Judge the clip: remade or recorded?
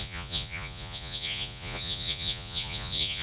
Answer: remade